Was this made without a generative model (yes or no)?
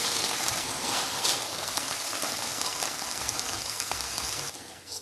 no